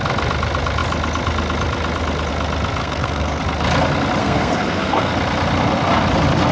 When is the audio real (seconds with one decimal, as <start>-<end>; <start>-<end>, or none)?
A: 0.0-2.8; 3.4-4.2; 5.1-6.5